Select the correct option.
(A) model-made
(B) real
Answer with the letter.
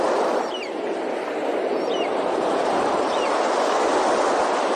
B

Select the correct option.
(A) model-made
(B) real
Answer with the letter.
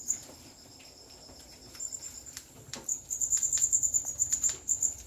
A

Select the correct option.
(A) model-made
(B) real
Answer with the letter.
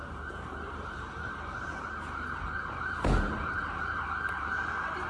A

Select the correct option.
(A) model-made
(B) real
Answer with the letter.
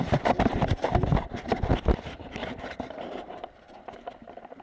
A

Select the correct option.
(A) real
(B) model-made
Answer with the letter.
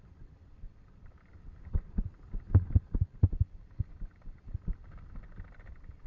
A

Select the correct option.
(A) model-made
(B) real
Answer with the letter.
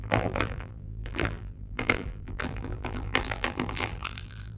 A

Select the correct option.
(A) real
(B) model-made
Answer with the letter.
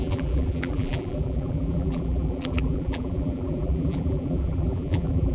B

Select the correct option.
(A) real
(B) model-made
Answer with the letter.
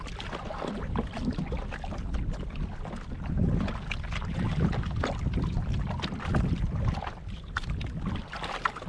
A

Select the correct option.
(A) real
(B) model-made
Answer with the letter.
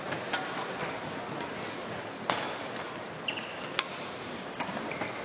A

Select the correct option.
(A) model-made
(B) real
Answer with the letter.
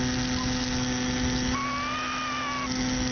B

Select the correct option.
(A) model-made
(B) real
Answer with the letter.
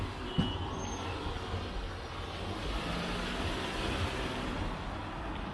B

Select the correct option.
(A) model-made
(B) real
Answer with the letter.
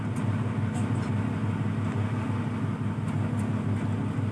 B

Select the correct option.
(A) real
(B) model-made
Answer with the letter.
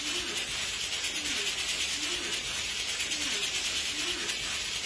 A